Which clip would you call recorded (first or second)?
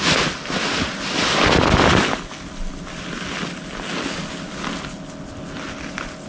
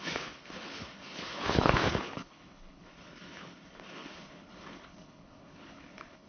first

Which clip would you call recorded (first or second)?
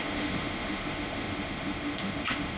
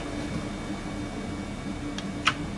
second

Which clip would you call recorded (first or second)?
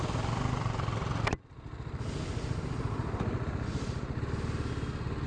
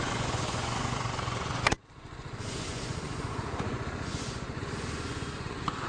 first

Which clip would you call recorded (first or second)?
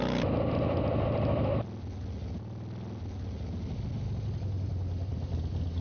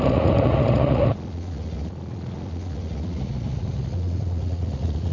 first